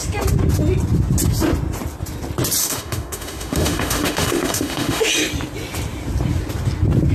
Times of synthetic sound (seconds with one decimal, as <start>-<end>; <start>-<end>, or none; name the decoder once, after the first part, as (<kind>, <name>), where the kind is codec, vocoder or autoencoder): 2.6-5.1 (autoencoder, DAC-VAE)